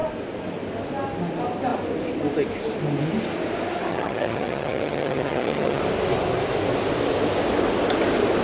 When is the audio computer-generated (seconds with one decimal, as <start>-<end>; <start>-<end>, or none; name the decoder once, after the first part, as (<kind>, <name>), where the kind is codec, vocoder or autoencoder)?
3.9-5.8 (vocoder, HiFi-GAN)

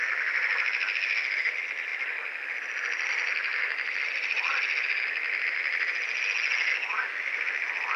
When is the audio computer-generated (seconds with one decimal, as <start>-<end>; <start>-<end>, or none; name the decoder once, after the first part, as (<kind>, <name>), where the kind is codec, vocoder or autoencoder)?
none

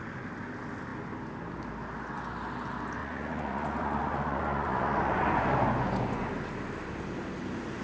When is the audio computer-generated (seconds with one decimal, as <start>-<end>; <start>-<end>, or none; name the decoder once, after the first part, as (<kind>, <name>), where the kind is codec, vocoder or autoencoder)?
3.0-6.3 (vocoder, Vocos)

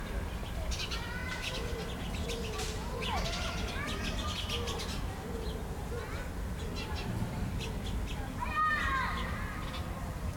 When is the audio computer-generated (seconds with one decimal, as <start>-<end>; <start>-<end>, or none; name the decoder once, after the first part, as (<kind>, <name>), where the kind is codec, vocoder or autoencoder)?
0.0-1.2 (vocoder, BigVGAN v2); 5.9-10.4

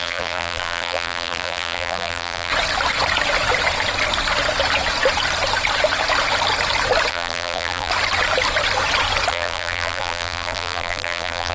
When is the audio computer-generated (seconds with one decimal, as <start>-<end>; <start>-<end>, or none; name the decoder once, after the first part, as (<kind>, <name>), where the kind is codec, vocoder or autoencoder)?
0.0-2.5 (vocoder, BigVGAN v2); 7.1-7.9; 9.3-11.5

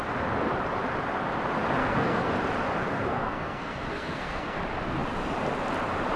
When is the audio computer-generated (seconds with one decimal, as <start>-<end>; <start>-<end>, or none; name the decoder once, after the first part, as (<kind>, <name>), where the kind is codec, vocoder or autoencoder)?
1.8-2.3 (codec, SNAC); 2.8-4.6

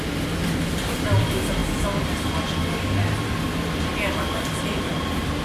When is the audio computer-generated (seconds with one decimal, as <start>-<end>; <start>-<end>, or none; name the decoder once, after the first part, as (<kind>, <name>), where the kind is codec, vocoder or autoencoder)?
none

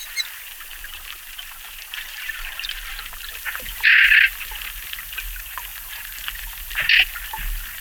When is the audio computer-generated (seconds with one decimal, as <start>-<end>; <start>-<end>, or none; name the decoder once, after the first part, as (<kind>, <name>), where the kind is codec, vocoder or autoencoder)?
0.7-5.0 (vocoder, BigVGAN v2); 5.7-6.7